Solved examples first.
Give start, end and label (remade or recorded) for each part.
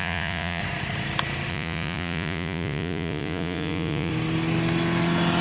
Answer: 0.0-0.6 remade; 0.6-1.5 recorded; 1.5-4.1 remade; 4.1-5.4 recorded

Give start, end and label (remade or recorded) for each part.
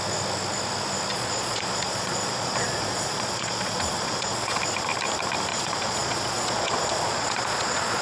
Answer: 0.0-1.1 recorded; 1.1-4.6 remade; 4.6-5.5 recorded; 5.5-8.0 remade